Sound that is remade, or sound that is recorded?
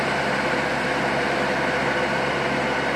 recorded